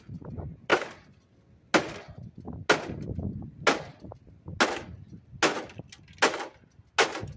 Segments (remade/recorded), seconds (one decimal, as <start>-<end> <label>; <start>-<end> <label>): 0.0-7.4 recorded